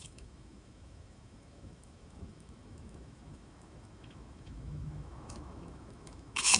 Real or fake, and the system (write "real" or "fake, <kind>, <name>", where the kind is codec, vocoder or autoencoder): fake, autoencoder, DAC-VAE